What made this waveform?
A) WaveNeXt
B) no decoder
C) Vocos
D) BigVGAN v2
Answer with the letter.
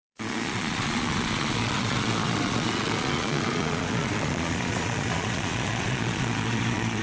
C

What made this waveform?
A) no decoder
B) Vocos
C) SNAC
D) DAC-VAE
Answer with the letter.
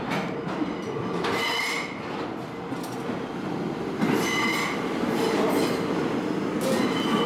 A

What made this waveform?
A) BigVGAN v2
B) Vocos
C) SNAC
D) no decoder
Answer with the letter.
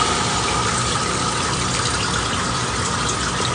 D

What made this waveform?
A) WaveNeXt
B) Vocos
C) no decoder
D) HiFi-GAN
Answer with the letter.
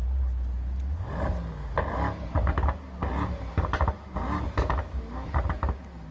C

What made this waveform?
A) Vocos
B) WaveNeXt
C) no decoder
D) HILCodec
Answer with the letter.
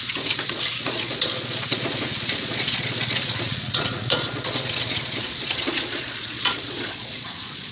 A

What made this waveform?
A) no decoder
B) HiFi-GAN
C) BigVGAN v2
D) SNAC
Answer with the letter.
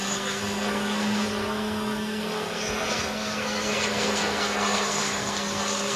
D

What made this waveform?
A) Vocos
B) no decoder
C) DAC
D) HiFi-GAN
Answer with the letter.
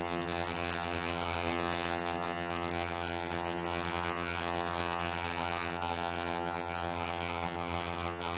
D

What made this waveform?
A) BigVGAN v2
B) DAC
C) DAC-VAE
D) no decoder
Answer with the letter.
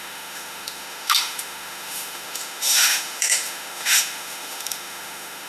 C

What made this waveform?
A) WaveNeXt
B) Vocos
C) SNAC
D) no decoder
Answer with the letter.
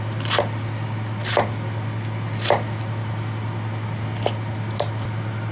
D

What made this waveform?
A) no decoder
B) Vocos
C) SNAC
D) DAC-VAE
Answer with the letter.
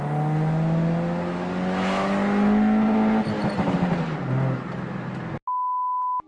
A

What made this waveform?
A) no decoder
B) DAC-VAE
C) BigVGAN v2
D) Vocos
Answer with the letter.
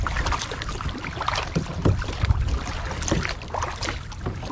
A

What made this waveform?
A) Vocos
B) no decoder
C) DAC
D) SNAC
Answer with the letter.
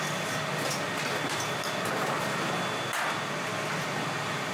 B